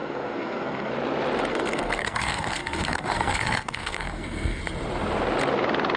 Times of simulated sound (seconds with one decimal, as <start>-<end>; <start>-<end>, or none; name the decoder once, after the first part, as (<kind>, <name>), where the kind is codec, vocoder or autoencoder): 0.0-0.9 (codec, SNAC); 1.5-4.6